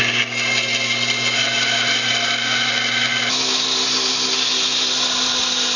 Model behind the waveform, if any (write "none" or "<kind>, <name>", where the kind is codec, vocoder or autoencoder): none